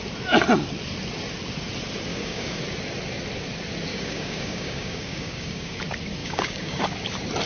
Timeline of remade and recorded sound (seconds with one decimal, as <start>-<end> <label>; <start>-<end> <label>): 0.0-2.1 recorded; 2.1-2.6 remade; 2.6-3.9 recorded; 3.9-5.8 remade; 5.8-6.2 recorded; 6.2-6.8 remade; 6.8-7.5 recorded